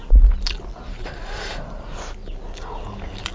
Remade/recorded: recorded